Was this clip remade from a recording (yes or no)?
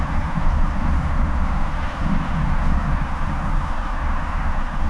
yes